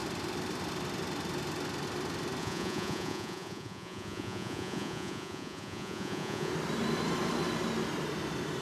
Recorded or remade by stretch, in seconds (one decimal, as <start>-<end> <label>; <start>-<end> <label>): 0.0-2.4 recorded; 2.4-6.5 remade; 6.5-8.6 recorded